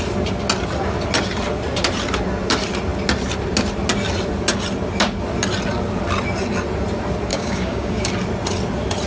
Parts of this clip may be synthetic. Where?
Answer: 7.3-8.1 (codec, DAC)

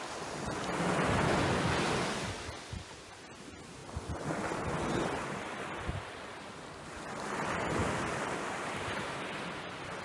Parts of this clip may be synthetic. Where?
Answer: none